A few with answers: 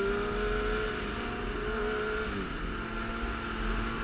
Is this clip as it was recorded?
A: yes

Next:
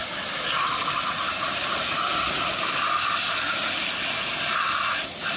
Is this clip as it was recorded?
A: yes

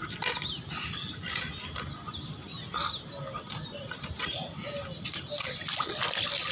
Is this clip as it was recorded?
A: yes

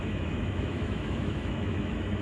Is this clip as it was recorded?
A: no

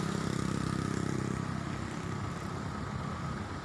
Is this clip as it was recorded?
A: yes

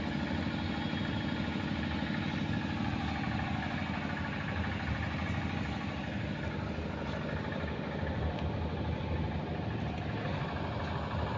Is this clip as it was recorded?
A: yes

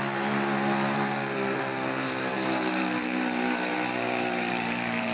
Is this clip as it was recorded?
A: no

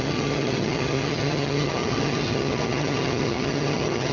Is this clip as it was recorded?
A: no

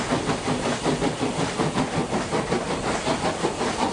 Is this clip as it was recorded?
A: yes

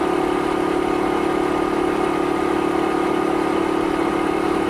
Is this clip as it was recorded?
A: yes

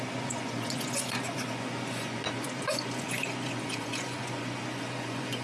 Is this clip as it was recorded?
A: no